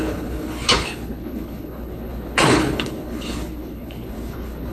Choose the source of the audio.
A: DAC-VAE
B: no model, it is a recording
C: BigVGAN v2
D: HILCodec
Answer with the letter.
D